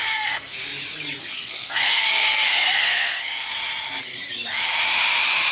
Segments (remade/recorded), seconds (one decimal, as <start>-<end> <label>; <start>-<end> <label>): 0.0-0.7 remade; 0.7-1.2 recorded; 1.2-3.5 remade; 3.5-5.5 recorded